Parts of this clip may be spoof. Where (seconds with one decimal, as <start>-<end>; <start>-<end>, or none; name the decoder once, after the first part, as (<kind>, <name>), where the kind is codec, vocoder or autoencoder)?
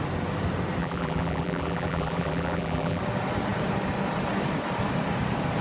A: 0.8-3.0 (vocoder, BigVGAN v2)